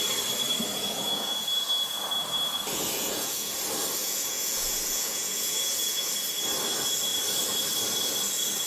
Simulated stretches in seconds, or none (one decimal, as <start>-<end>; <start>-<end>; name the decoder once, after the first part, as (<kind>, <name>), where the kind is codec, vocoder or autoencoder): 0.7-2.0 (vocoder, Vocos); 2.7-3.5; 4.0-6.1